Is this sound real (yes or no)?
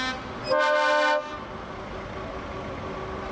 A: yes